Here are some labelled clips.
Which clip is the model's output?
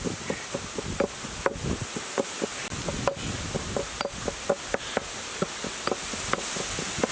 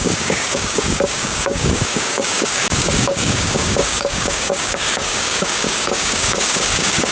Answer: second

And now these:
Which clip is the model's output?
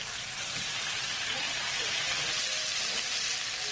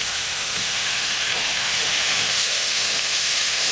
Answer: second